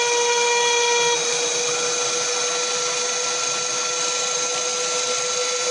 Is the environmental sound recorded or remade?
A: recorded